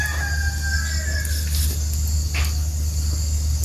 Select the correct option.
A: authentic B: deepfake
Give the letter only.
A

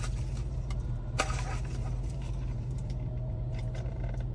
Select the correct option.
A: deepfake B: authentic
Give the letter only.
A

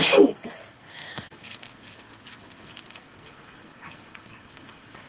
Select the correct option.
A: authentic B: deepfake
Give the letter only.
B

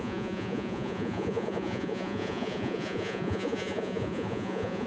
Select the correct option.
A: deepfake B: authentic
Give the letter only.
A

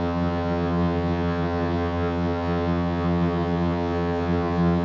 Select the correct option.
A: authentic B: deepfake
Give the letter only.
B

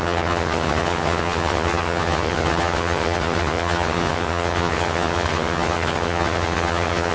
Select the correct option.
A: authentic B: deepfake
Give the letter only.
B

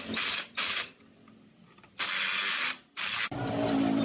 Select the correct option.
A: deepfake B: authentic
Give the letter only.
A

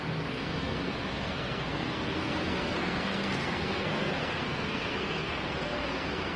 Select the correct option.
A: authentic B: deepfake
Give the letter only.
B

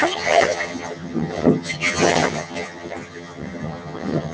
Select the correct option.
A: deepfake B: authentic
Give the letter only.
A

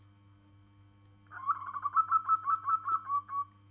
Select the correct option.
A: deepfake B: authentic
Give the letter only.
B